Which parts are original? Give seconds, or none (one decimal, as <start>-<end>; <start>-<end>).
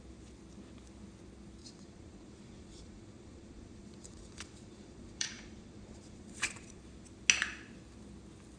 0.0-1.6; 6.8-8.6